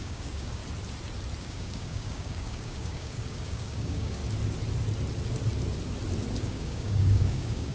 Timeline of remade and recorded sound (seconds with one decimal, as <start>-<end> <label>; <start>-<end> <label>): 0.0-0.6 remade; 0.6-1.4 recorded; 1.4-4.2 remade; 4.2-6.4 recorded; 6.4-7.7 remade